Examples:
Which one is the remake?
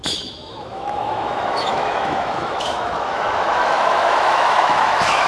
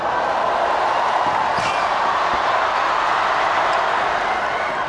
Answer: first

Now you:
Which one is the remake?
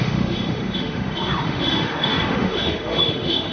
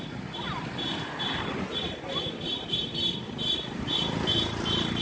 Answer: first